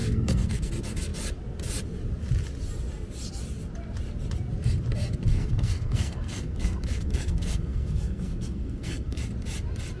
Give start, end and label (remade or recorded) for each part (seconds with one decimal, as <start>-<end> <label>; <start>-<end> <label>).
0.0-0.7 remade; 0.7-5.3 recorded; 5.3-9.2 remade; 9.2-10.0 recorded